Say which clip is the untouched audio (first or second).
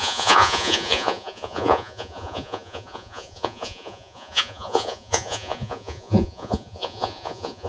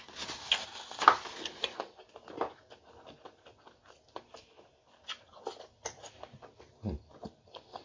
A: second